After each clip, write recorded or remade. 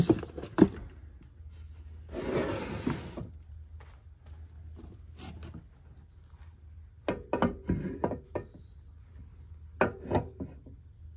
recorded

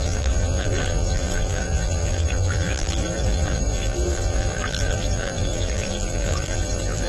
remade